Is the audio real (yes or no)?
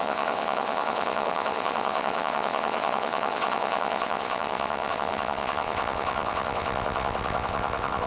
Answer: no